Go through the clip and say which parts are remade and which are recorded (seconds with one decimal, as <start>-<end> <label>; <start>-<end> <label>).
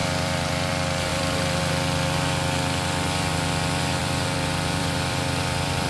0.0-0.7 remade; 0.7-1.1 recorded; 1.1-1.6 remade; 1.6-4.0 recorded; 4.0-5.9 remade